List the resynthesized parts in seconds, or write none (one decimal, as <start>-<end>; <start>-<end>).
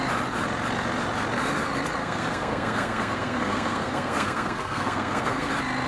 2.0-5.5